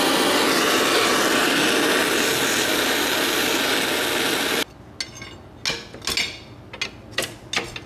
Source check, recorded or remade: recorded